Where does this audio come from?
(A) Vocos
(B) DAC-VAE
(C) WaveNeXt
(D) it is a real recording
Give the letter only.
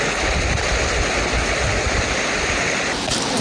D